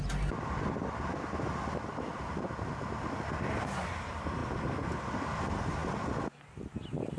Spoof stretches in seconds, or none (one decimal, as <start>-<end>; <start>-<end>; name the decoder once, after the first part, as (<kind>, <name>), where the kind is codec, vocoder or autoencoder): none